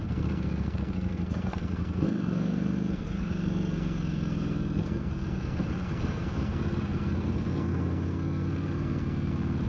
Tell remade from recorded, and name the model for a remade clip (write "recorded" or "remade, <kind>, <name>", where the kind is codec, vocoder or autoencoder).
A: remade, codec, SNAC